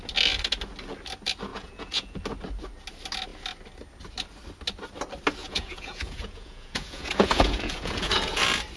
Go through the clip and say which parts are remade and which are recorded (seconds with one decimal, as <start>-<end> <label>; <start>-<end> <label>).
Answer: 0.0-1.5 recorded; 1.5-2.2 remade; 2.2-5.4 recorded; 5.4-8.4 remade; 8.4-8.8 recorded